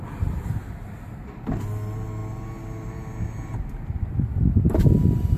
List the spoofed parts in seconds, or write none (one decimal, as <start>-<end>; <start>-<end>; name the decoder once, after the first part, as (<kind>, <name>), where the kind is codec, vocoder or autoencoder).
none

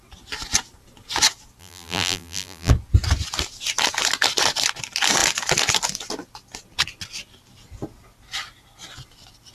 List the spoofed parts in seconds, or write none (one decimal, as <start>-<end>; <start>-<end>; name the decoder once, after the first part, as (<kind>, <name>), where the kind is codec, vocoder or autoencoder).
1.6-2.7 (vocoder, BigVGAN v2)

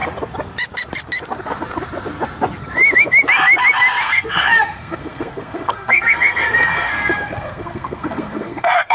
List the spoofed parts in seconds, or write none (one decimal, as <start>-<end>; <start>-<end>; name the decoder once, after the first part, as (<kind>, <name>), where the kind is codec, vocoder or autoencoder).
4.0-8.9 (codec, SNAC)